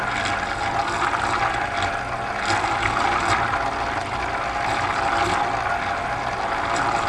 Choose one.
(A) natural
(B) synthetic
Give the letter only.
A